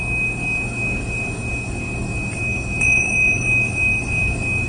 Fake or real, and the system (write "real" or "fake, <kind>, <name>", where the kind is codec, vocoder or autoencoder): fake, codec, DAC